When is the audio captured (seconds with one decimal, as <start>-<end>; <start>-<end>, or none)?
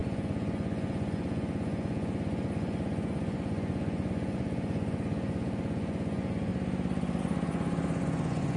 6.5-7.2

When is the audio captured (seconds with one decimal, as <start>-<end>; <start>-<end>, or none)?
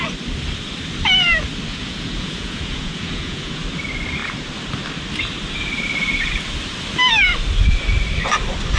0.0-1.7; 3.6-8.8